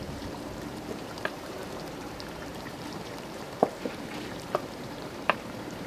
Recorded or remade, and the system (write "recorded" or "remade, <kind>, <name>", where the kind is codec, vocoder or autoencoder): remade, vocoder, BigVGAN v2